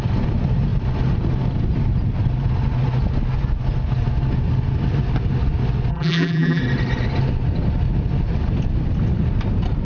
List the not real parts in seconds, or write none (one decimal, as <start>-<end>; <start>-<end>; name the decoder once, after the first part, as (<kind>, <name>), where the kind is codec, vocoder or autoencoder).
5.9-6.6 (vocoder, BigVGAN v2)